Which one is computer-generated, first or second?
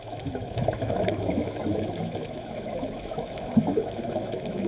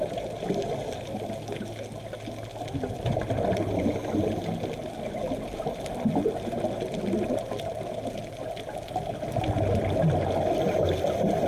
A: first